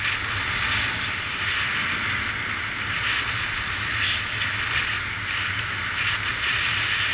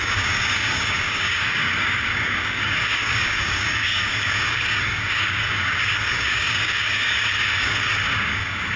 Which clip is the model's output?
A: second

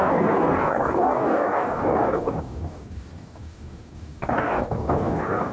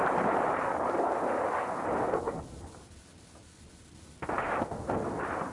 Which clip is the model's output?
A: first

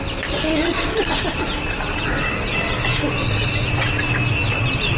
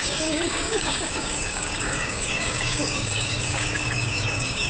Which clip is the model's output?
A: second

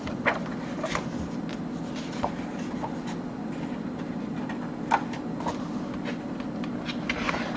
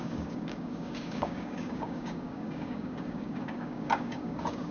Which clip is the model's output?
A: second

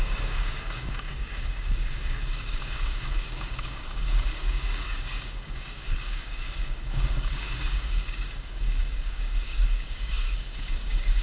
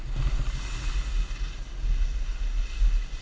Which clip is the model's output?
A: first